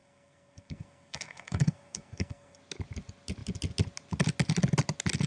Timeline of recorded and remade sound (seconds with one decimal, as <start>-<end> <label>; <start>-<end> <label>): 0.0-2.6 remade; 2.6-5.3 recorded